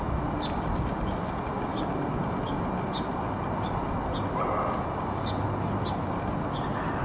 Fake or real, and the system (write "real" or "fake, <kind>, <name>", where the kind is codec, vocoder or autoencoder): real